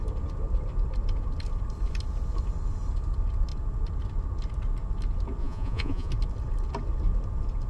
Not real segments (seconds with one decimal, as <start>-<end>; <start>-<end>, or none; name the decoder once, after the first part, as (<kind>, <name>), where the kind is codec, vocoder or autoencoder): 5.4-6.1 (vocoder, Vocos)